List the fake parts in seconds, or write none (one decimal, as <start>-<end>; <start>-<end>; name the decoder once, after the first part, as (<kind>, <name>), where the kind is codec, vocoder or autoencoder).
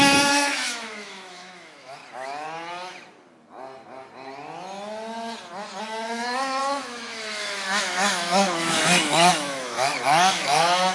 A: 0.0-2.0 (autoencoder, DAC-VAE); 5.8-10.9